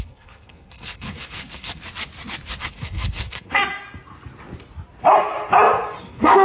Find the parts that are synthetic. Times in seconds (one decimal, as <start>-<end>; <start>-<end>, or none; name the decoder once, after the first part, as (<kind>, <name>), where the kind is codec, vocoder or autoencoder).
0.0-1.8 (codec, SNAC); 2.6-3.6; 6.0-6.4